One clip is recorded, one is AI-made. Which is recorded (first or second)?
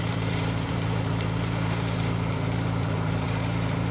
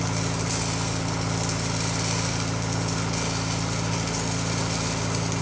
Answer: second